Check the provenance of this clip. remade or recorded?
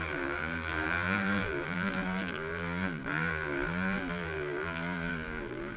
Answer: remade